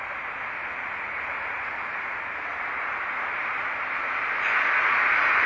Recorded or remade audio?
recorded